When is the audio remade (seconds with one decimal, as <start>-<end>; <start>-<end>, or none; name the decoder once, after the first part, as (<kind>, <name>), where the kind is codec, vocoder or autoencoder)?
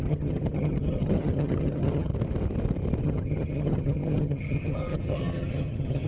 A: 0.0-2.1 (vocoder, HiFi-GAN); 3.0-6.1